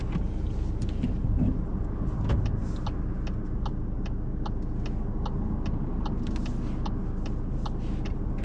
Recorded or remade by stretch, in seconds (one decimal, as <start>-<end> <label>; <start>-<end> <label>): 0.0-8.4 recorded